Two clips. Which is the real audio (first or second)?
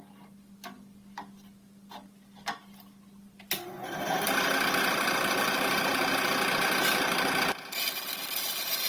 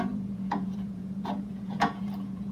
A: first